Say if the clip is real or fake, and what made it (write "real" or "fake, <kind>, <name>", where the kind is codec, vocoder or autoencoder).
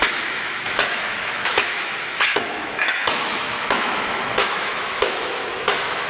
fake, autoencoder, DAC-VAE